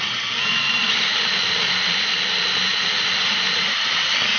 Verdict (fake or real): fake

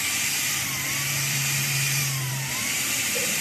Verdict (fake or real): fake